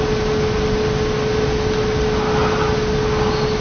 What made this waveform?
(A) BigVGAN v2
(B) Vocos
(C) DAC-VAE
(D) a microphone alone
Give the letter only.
D